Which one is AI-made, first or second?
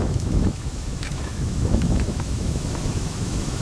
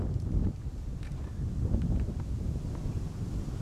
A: first